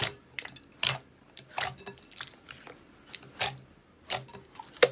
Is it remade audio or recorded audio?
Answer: recorded